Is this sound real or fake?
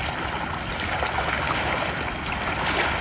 real